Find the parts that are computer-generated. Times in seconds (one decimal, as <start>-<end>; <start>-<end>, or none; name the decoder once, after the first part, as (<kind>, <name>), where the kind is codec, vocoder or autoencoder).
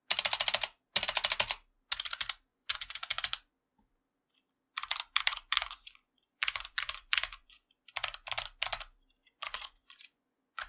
2.5-3.5 (vocoder, Vocos); 5.3-7.7; 9.2-10.7